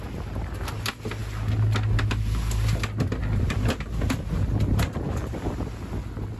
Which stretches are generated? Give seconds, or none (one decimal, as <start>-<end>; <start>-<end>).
none